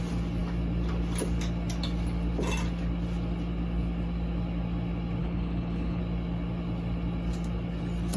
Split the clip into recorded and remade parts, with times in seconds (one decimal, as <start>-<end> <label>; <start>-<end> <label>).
0.0-5.2 recorded; 5.2-6.0 remade; 6.0-8.2 recorded